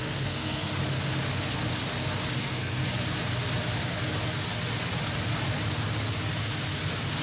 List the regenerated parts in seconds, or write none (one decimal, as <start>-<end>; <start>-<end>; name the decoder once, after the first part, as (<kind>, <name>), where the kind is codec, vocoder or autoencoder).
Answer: 0.0-0.8 (codec, SNAC); 2.4-2.8